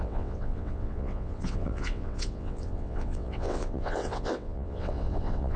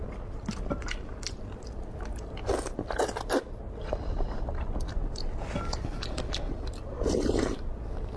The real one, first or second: second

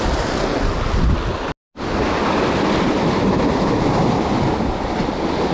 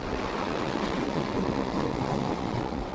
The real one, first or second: first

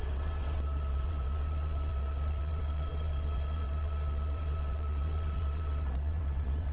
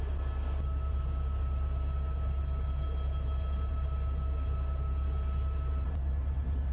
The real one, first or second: second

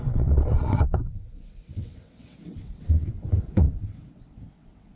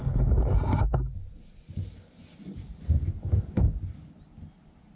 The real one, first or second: second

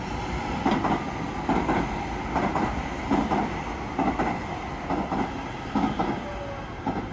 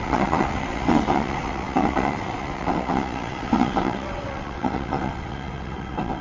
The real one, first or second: first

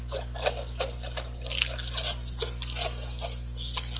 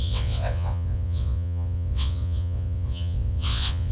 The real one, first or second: first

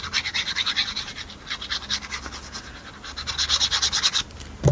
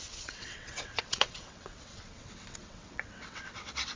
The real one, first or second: first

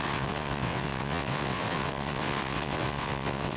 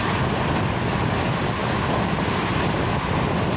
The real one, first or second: second